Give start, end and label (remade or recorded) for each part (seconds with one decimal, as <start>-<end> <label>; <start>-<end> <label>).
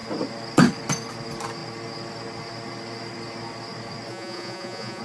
0.0-4.1 recorded; 4.1-5.0 remade